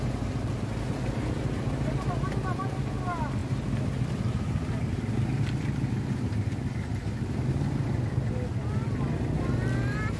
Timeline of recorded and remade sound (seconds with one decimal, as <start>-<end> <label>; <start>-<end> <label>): 0.0-10.2 recorded